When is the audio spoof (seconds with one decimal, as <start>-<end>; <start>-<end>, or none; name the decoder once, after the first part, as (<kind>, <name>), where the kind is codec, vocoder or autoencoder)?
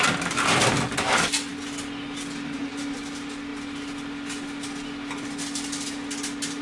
none